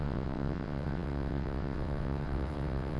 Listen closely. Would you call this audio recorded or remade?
remade